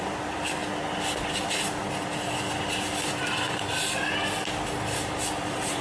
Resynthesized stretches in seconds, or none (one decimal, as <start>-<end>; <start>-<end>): 0.0-0.6; 3.0-5.8